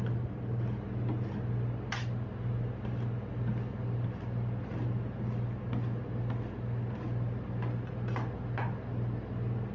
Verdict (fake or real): real